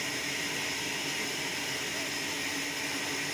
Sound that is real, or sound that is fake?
real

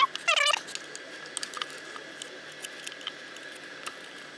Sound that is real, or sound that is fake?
real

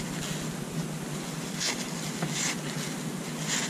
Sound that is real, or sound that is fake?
real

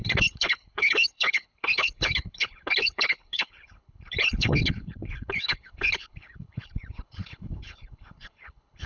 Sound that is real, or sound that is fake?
fake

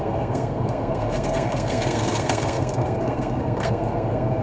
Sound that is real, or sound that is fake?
fake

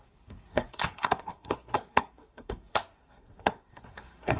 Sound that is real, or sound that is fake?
fake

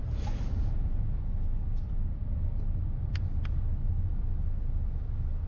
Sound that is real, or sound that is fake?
real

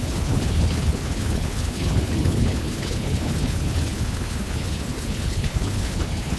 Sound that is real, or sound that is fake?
fake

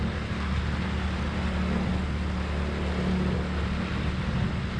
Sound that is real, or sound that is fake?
real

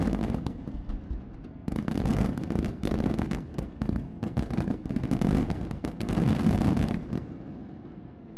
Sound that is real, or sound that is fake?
fake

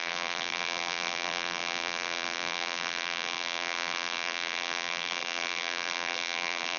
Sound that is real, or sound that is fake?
fake